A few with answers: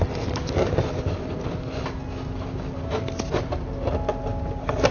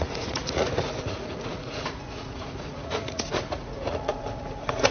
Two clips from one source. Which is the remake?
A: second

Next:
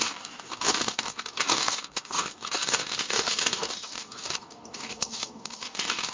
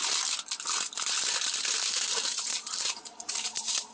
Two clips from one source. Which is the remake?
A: first